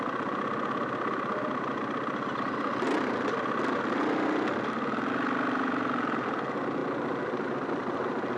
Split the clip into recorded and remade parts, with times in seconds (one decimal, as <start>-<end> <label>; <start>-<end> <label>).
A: 0.0-8.4 recorded